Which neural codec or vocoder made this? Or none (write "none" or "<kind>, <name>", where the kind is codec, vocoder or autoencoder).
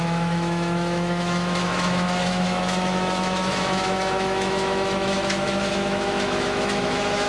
autoencoder, DAC-VAE